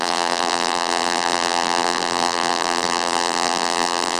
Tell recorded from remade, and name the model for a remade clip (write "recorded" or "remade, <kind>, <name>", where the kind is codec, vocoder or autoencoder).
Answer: remade, vocoder, BigVGAN v2